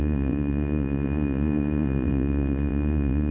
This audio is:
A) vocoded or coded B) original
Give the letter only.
A